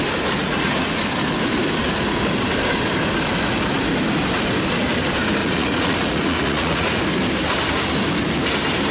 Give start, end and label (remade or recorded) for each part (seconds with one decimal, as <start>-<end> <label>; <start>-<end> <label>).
0.0-0.4 recorded; 0.4-1.0 remade; 1.0-5.4 recorded; 5.4-7.0 remade; 7.0-8.9 recorded